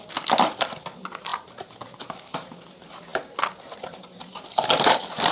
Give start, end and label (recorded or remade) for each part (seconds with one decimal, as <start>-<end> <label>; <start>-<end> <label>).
0.0-5.3 recorded